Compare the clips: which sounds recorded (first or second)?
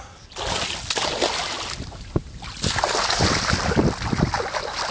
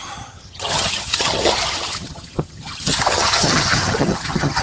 first